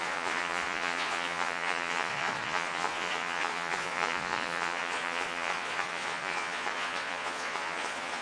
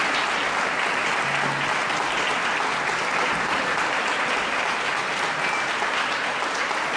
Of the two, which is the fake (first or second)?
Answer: first